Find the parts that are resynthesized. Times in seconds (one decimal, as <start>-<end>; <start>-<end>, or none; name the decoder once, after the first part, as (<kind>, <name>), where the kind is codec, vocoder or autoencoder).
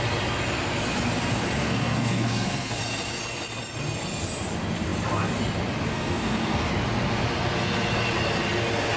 1.6-2.8 (codec, SNAC); 5.9-6.7